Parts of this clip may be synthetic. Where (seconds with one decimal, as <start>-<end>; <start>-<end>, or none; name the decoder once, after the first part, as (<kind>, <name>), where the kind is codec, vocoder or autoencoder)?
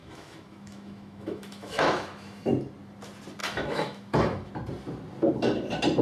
0.0-2.5 (autoencoder, DAC-VAE); 3.4-4.5